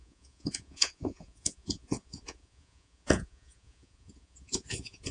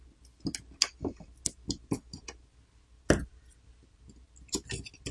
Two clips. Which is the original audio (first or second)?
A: second